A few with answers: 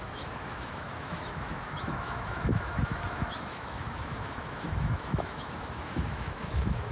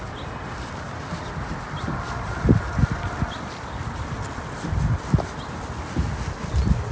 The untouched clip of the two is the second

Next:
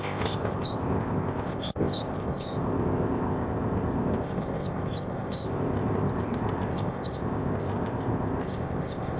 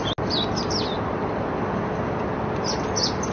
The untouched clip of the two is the second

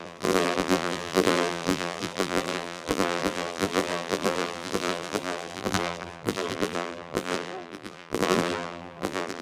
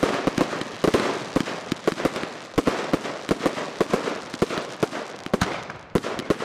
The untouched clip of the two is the second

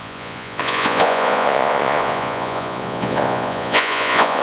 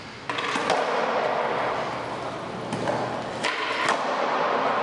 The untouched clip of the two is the second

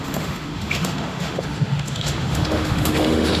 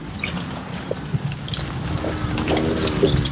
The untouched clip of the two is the second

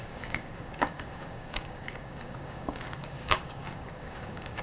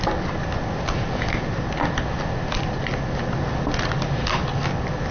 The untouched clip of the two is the second